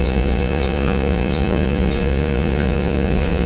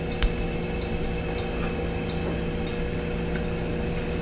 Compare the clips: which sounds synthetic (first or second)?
first